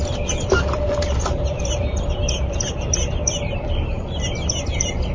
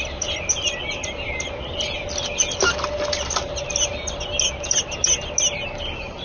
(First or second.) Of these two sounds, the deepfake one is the first